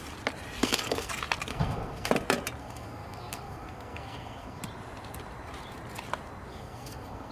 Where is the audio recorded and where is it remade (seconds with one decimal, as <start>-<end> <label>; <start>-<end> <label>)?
0.0-0.6 recorded; 0.6-1.1 remade; 1.1-1.5 recorded; 1.5-2.1 remade; 2.1-2.6 recorded; 2.6-4.6 remade; 4.6-6.5 recorded; 6.5-7.3 remade